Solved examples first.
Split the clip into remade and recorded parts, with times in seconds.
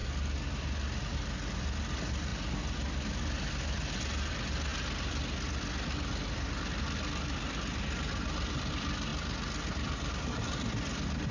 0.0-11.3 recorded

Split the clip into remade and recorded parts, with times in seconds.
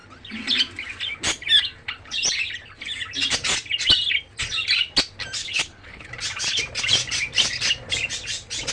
0.0-5.4 recorded; 5.4-6.1 remade; 6.1-8.7 recorded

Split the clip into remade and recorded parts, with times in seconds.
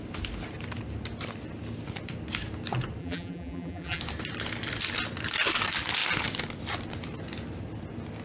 0.0-3.0 recorded; 3.0-4.0 remade; 4.0-8.2 recorded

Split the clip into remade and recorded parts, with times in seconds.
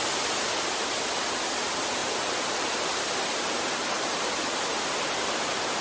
0.0-5.8 recorded